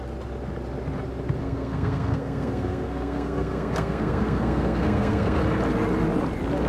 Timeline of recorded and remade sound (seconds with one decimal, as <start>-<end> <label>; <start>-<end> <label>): 0.0-1.4 recorded; 1.4-5.4 remade; 5.4-6.7 recorded